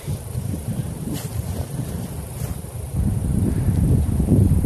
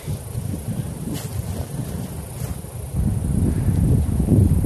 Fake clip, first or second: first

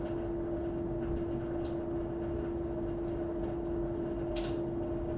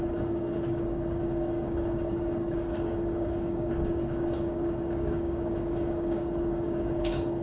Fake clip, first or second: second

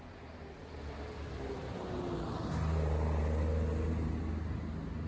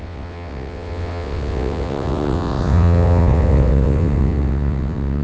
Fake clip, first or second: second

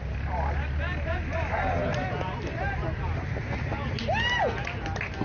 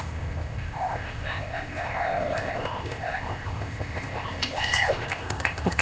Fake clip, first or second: second